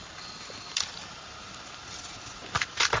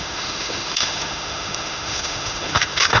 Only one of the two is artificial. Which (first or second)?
second